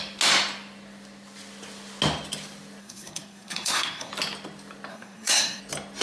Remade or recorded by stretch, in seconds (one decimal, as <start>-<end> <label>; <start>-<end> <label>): 0.0-2.8 recorded; 2.8-4.1 remade; 4.1-4.9 recorded; 4.9-5.6 remade; 5.6-6.0 recorded

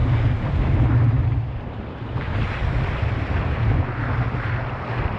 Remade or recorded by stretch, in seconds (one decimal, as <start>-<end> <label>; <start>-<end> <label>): 0.0-5.2 recorded